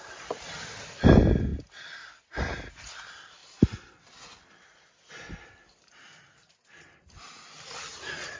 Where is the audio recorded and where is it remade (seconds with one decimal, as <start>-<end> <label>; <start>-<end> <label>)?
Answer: 0.0-8.4 recorded